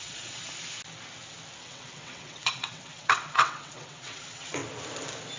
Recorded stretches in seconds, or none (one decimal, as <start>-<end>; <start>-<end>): 0.4-1.6; 4.6-5.4